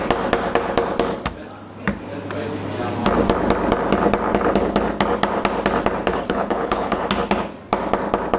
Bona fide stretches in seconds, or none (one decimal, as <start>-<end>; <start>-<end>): 0.0-6.1; 7.0-8.4

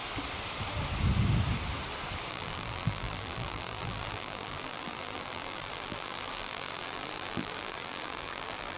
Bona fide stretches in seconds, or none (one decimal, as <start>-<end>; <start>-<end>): 0.0-2.3

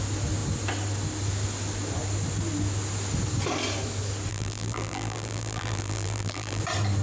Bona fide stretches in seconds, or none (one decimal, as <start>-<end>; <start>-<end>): 0.0-4.3; 6.6-7.0

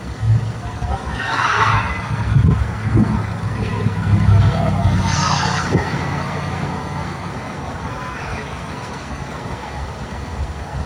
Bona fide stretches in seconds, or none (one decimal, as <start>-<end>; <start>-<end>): none